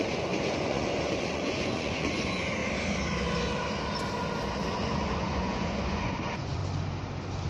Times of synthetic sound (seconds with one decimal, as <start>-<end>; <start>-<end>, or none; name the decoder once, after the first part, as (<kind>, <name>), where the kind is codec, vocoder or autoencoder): 0.0-2.6 (vocoder, Vocos); 4.7-6.6